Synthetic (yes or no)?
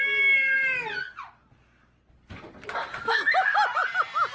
no